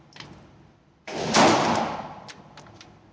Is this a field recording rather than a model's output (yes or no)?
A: yes